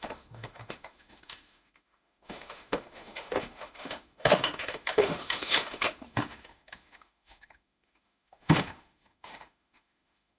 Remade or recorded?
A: remade